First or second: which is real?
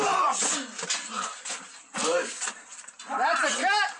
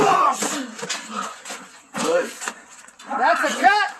first